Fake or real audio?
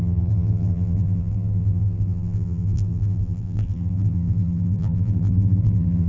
fake